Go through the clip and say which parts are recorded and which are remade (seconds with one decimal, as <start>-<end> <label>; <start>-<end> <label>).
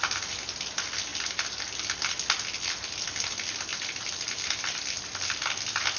0.0-1.1 recorded; 1.1-1.8 remade; 1.8-3.7 recorded; 3.7-4.8 remade; 4.8-6.0 recorded